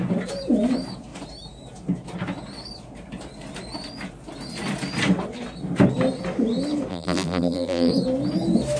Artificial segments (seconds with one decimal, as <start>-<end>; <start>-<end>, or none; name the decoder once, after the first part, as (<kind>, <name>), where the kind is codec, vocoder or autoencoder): 6.9-7.9 (vocoder, BigVGAN v2)